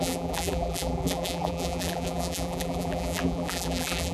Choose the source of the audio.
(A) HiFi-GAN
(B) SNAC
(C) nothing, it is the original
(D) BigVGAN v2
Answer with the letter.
D